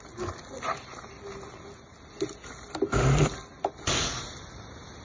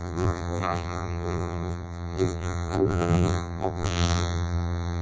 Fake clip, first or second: second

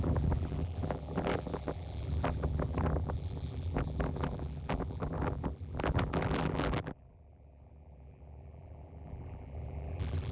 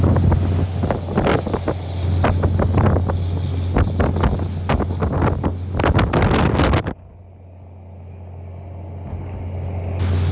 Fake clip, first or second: first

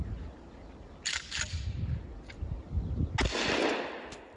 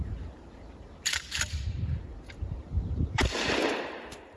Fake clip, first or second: second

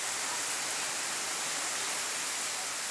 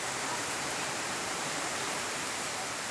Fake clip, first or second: second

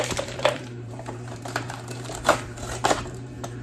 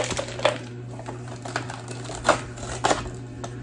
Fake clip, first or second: first